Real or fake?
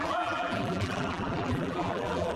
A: fake